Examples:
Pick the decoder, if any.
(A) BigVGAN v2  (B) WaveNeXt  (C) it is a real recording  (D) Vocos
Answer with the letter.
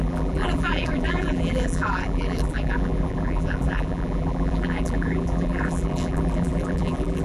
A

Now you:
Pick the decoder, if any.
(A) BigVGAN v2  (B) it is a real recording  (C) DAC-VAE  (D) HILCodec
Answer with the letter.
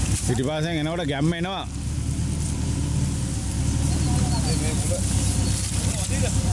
B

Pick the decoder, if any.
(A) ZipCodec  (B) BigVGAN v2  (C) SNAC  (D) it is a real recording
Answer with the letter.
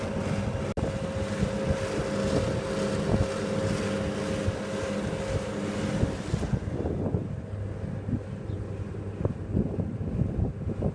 D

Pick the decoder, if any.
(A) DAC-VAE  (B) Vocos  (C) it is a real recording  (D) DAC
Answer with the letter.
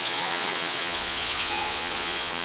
B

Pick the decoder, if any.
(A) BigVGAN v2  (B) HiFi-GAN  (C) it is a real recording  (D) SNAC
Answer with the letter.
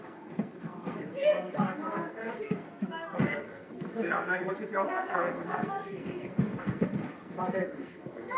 D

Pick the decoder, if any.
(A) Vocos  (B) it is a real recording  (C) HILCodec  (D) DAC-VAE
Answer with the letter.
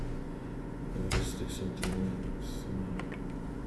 A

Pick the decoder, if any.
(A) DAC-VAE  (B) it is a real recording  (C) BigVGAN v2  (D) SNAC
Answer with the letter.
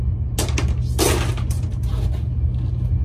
B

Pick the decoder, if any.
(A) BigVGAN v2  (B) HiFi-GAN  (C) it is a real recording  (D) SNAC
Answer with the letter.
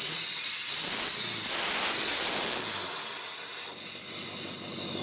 C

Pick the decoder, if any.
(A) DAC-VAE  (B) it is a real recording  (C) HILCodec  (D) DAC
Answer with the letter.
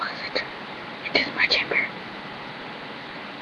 B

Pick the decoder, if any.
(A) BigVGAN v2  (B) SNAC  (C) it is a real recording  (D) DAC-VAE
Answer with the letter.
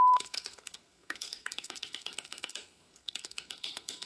B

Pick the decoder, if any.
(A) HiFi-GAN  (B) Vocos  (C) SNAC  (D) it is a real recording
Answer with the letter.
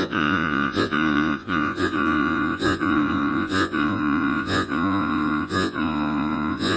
B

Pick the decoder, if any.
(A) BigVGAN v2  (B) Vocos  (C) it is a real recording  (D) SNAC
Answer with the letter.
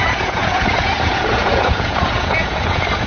B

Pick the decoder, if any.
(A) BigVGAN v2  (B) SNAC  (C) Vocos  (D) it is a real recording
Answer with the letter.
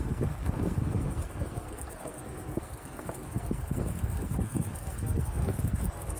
B